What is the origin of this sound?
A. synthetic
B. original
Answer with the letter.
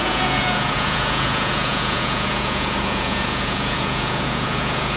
A